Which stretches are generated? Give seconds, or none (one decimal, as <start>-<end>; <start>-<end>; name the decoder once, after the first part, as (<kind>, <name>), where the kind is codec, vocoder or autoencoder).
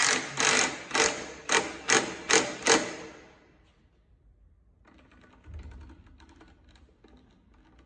none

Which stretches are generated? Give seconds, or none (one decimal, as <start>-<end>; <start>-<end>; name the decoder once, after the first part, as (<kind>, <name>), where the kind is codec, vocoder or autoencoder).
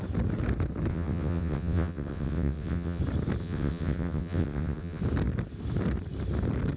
0.9-3.0 (vocoder, WaveNeXt); 3.4-5.0